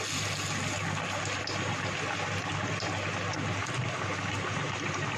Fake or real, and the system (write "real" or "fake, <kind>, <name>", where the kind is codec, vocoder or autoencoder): real